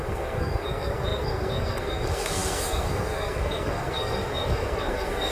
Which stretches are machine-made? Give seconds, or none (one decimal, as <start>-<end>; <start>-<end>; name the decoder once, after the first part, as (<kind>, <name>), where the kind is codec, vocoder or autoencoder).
0.0-5.3 (codec, SNAC)